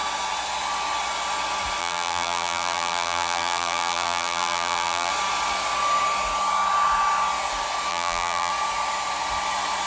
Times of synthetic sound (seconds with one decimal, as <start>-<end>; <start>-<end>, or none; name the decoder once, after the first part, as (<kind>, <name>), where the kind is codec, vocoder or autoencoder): 1.8-5.1 (vocoder, BigVGAN v2); 7.9-8.5